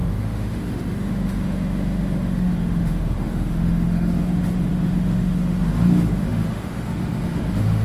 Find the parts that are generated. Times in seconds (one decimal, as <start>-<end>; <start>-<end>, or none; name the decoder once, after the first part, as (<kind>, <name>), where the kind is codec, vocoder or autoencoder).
0.0-7.8 (autoencoder, DAC-VAE)